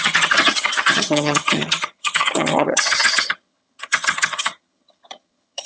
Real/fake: fake